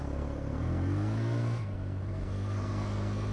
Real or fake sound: fake